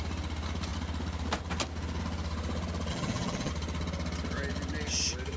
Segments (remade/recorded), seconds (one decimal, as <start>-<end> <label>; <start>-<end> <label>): 0.0-2.9 recorded; 2.9-3.5 remade; 3.5-5.4 recorded